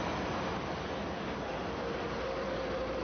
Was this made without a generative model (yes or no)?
yes